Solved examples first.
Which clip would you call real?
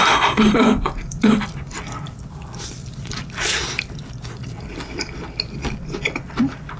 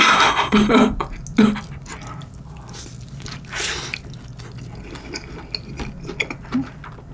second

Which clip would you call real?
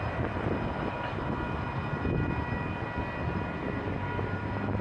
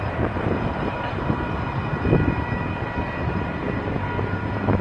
first